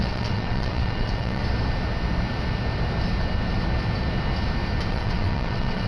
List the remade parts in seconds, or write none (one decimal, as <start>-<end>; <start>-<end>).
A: 0.0-1.4; 4.9-5.9